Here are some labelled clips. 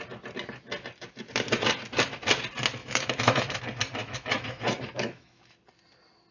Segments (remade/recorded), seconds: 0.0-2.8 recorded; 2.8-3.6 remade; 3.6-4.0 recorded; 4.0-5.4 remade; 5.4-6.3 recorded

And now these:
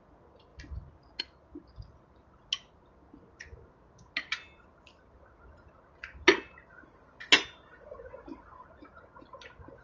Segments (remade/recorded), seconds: 0.0-9.8 recorded

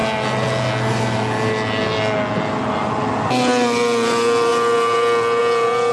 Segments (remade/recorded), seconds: 0.0-5.9 recorded

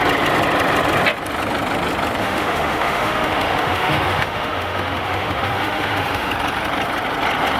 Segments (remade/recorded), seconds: 0.0-2.2 recorded; 2.2-6.3 remade; 6.3-7.6 recorded

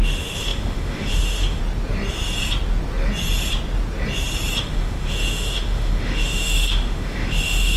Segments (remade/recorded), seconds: 0.0-1.6 remade; 1.6-4.6 recorded; 4.6-7.8 remade